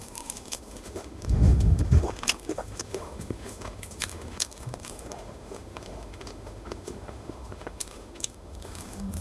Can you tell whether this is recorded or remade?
remade